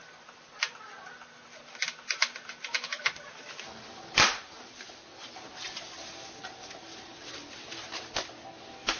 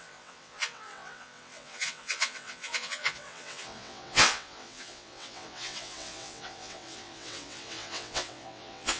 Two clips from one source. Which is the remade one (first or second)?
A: second